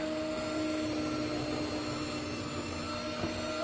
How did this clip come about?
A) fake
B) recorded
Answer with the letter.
B